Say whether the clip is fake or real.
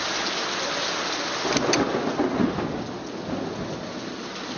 real